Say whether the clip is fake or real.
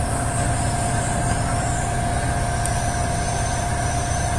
real